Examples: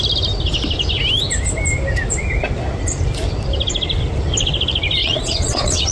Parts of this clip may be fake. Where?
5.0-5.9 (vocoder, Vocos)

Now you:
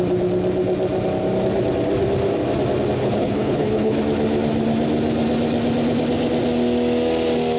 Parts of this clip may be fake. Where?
3.0-4.0 (codec, HILCodec)

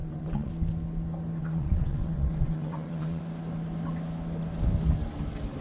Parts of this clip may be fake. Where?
0.0-0.5 (vocoder, WaveNeXt); 1.4-3.2